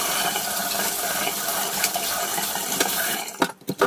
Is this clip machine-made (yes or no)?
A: no